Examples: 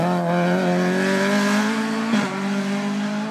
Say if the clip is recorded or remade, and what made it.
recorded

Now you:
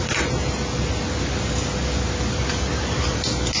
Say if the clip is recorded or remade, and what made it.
recorded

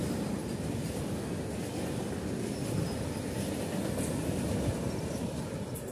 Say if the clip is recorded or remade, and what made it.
recorded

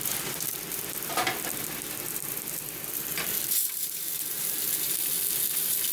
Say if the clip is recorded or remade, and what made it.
remade, vocoder, BigVGAN v2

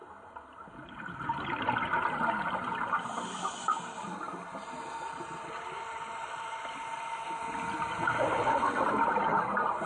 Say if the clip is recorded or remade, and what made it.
recorded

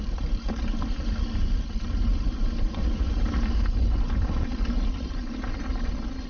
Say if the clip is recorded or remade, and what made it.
remade, vocoder, BigVGAN v2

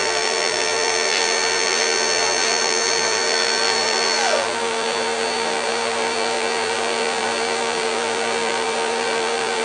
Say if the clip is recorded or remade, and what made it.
remade, vocoder, BigVGAN v2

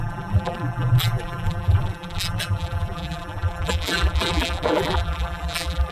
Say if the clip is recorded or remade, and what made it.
remade, vocoder, BigVGAN v2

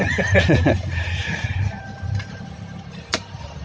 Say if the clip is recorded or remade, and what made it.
remade, vocoder, BigVGAN v2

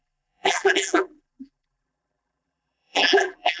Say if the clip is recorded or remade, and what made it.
remade, vocoder, BigVGAN v2